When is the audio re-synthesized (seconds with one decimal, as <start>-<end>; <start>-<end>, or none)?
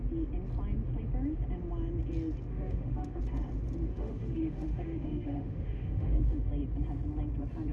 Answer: 2.5-3.2; 3.9-6.5